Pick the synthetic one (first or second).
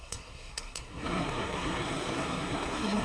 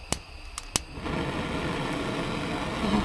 first